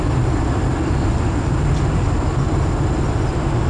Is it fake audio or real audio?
real